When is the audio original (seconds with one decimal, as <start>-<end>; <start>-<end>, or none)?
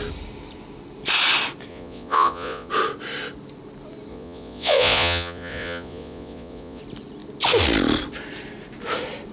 0.0-1.7; 2.7-4.1; 6.8-9.3